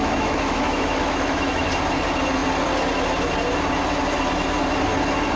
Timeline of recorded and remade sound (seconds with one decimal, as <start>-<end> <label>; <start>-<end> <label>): 0.0-1.6 remade; 1.6-5.4 recorded